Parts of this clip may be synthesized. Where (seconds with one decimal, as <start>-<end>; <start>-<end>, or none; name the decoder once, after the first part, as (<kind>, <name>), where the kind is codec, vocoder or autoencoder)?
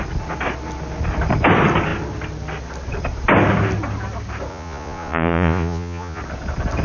4.5-6.2 (vocoder, Vocos)